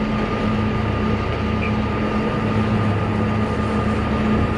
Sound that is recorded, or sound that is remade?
recorded